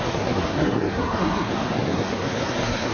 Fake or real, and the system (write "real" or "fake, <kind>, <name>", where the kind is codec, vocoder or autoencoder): fake, codec, SNAC